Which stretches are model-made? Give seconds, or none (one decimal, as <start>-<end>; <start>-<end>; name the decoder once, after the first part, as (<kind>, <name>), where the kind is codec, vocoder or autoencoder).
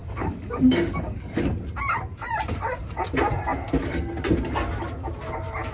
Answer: 0.0-1.4 (codec, DAC)